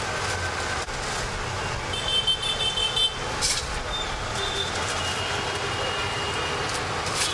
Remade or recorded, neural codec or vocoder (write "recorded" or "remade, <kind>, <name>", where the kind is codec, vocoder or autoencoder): recorded